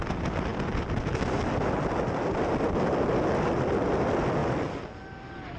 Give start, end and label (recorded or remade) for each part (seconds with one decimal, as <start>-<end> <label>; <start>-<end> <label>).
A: 0.0-5.6 recorded